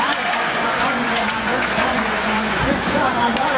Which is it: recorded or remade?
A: remade